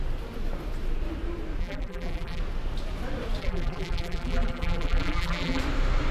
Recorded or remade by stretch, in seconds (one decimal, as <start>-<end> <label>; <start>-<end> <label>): 0.0-1.6 recorded; 1.6-2.4 remade; 2.4-3.4 recorded; 3.4-5.6 remade; 5.6-6.1 recorded